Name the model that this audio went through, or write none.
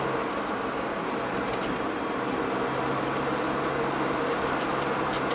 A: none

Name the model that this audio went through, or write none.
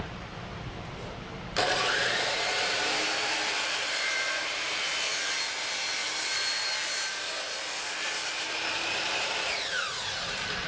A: vocoder, BigVGAN v2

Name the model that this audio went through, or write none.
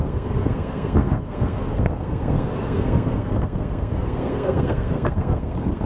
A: codec, SNAC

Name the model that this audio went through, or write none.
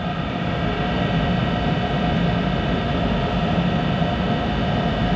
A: none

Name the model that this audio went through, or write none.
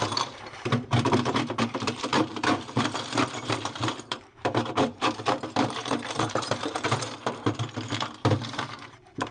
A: vocoder, BigVGAN v2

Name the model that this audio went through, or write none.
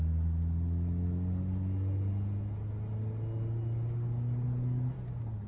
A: none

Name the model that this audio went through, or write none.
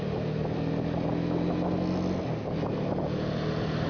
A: none